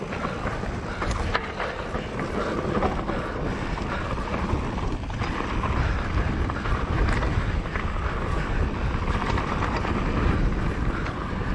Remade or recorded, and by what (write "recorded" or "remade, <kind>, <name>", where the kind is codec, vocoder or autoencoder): recorded